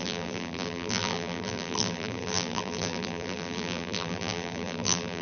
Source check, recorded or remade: remade